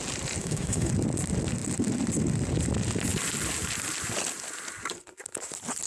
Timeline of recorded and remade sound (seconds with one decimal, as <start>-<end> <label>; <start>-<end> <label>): 0.0-0.4 recorded; 0.4-0.9 remade; 0.9-5.9 recorded